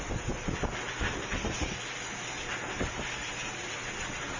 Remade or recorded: recorded